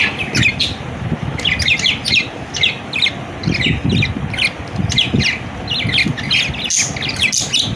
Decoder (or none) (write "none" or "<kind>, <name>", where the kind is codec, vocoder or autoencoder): none